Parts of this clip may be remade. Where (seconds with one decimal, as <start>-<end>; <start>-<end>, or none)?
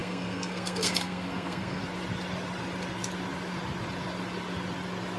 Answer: 0.0-1.8